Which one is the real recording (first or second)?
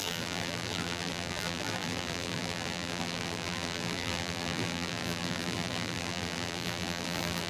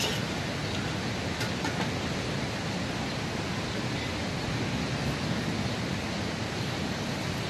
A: second